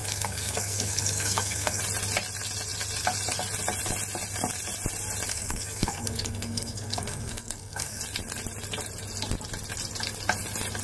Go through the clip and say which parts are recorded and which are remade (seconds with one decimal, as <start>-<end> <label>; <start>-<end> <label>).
0.0-1.8 remade; 1.8-5.3 recorded; 5.3-8.0 remade; 8.0-10.8 recorded